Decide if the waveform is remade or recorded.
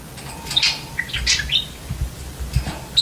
recorded